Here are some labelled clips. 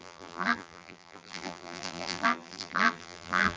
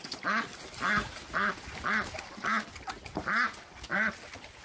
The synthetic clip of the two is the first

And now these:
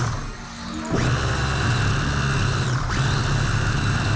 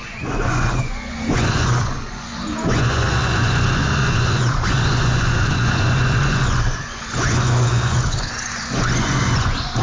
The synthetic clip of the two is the second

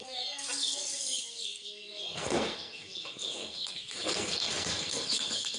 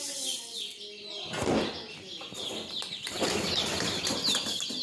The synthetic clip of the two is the first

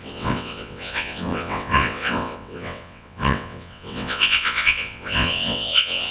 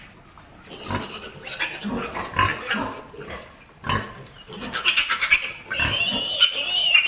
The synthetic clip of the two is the first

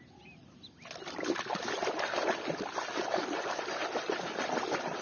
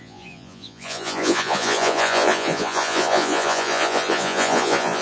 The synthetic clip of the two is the second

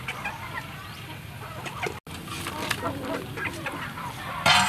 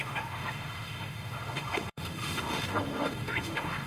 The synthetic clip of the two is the second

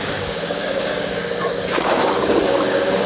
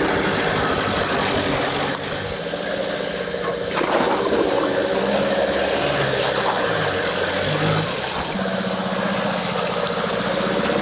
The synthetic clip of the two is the first